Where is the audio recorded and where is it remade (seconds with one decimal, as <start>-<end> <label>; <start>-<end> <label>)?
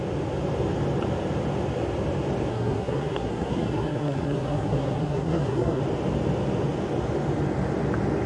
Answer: 0.0-2.5 recorded; 2.5-5.8 remade; 5.8-8.3 recorded